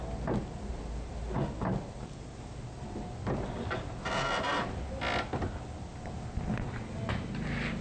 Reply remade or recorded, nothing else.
recorded